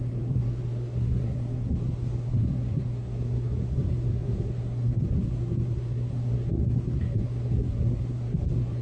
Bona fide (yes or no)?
no